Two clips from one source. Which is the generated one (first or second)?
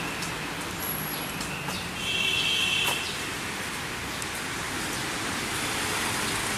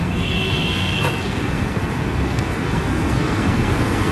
second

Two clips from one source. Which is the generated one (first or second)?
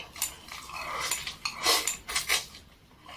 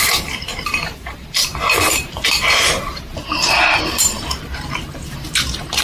second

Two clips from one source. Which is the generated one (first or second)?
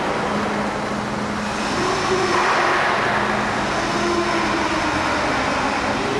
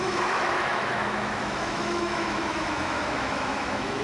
second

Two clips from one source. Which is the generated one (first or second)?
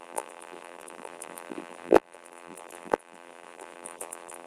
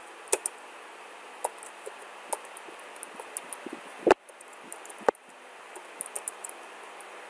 first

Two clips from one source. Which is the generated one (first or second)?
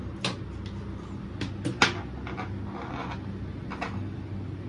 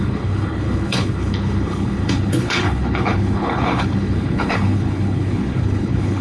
second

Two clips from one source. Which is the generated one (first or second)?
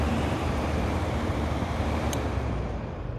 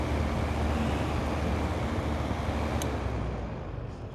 first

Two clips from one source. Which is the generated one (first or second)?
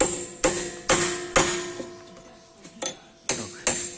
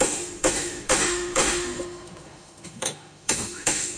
second